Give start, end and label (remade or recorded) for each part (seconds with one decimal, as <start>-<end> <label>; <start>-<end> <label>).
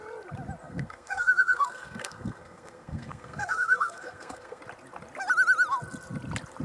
0.0-0.6 recorded; 0.6-4.6 remade; 4.6-6.6 recorded